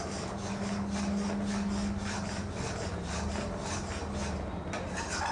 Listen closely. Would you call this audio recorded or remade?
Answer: recorded